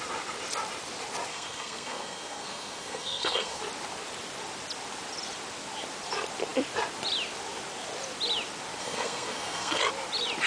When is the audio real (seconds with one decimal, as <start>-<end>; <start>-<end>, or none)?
0.0-1.3; 3.6-8.8; 9.8-10.5

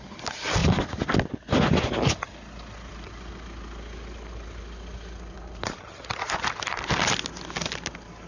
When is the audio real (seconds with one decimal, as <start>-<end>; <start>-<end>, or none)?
0.0-8.3

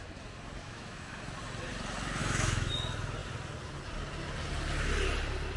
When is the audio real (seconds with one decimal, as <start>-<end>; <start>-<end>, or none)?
0.0-0.6; 1.2-2.2; 2.7-5.6

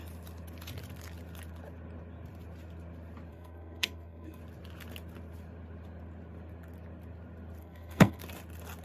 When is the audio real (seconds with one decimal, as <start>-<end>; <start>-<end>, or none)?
0.0-3.3; 4.4-7.6; 8.2-8.8

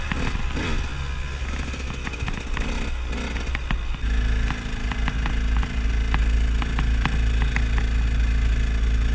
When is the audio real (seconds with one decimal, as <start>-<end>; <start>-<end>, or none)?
0.0-9.1

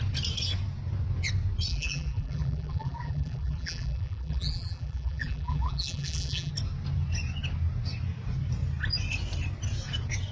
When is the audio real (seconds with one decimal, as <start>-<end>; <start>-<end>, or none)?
0.0-1.7; 6.5-10.3